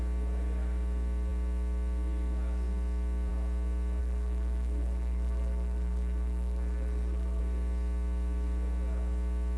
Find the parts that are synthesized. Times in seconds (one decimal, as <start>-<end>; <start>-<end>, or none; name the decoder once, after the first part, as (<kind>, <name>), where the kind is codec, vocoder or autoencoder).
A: 4.0-7.4 (codec, SNAC)